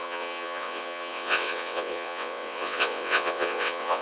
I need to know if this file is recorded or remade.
remade